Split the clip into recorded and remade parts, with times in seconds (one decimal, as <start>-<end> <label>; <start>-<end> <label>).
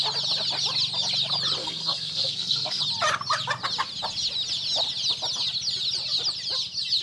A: 0.0-1.6 recorded; 1.6-2.8 remade; 2.8-7.0 recorded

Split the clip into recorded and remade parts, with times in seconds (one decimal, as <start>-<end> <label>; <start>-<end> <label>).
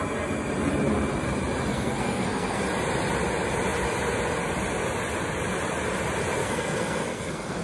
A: 0.0-1.7 recorded; 1.7-2.6 remade; 2.6-6.4 recorded; 6.4-7.6 remade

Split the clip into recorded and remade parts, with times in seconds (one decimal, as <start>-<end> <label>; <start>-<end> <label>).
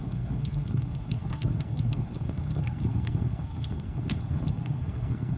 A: 0.0-5.4 remade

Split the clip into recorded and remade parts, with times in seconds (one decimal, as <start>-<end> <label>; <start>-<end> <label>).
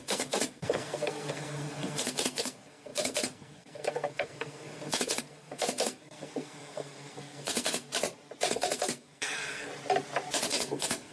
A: 0.0-7.9 remade; 7.9-8.5 recorded; 8.5-9.7 remade; 9.7-10.5 recorded; 10.5-11.1 remade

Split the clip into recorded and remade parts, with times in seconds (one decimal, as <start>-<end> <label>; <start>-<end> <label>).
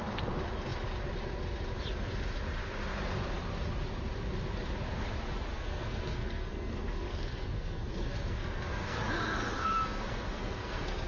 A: 0.0-5.5 recorded; 5.5-9.0 remade; 9.0-9.6 recorded; 9.6-11.1 remade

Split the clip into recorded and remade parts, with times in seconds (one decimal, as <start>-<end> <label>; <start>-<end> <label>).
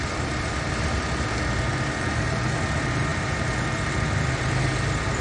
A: 0.0-5.2 recorded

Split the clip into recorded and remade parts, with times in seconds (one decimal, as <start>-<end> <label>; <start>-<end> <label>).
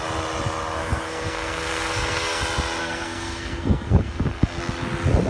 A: 0.0-0.8 recorded; 0.8-2.4 remade; 2.4-2.8 recorded; 2.8-4.6 remade; 4.6-5.3 recorded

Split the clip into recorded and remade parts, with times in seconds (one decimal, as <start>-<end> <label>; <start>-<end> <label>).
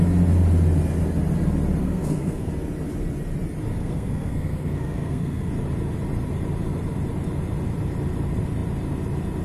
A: 0.0-1.8 recorded; 1.8-2.5 remade; 2.5-3.8 recorded; 3.8-5.5 remade; 5.5-9.4 recorded